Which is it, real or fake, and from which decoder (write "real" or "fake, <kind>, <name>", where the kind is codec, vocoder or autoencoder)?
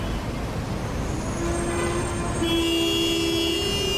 real